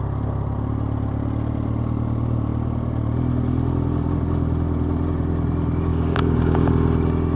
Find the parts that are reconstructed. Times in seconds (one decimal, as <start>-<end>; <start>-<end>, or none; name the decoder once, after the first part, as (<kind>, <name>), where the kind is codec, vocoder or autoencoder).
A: 5.9-6.7 (codec, DAC)